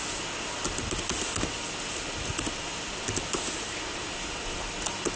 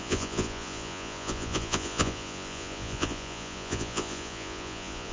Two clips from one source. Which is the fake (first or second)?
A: second